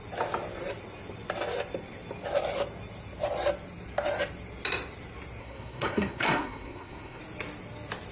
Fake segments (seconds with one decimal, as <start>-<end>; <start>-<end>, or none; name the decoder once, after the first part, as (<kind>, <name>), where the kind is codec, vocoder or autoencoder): 5.4-7.2 (codec, SNAC)